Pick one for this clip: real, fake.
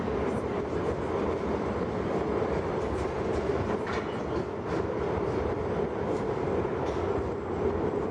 real